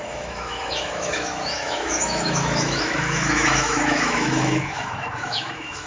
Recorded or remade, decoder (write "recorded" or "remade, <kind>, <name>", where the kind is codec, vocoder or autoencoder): remade, autoencoder, DAC-VAE